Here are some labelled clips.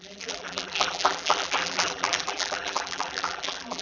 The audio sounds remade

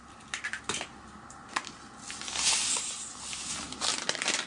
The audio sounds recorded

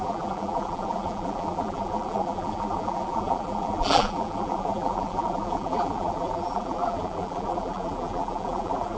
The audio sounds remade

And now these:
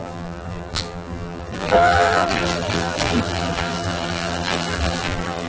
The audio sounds remade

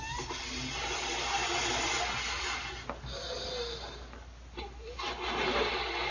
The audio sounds recorded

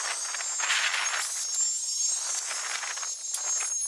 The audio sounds recorded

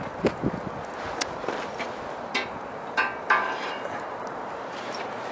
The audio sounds recorded